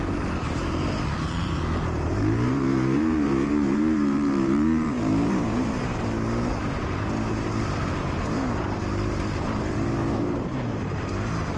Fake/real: fake